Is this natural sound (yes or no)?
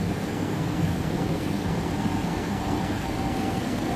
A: no